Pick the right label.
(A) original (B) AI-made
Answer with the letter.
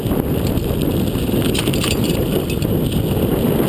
A